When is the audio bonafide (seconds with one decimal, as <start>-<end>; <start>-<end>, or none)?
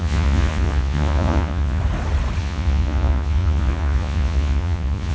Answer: 1.8-2.4